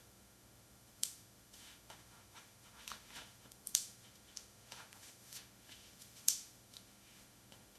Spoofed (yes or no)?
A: yes